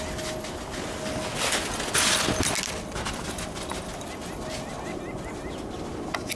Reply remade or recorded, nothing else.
recorded